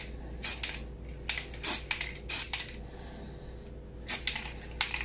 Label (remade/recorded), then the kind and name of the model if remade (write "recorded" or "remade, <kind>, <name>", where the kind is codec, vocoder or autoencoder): recorded